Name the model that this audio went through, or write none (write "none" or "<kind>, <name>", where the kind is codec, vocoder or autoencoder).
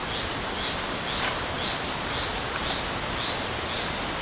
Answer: none